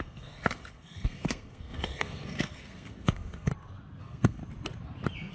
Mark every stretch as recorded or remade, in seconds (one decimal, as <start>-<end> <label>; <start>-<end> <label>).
0.0-3.5 remade; 3.5-4.0 recorded; 4.0-4.4 remade; 4.4-5.3 recorded